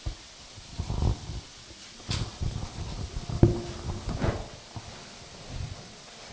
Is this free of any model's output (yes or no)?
yes